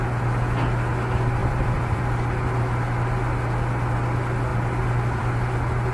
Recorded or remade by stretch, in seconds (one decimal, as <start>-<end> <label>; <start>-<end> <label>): 0.0-1.4 recorded; 1.4-2.0 remade; 2.0-5.9 recorded